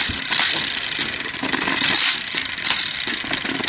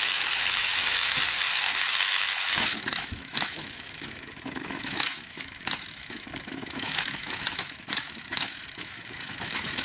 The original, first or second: first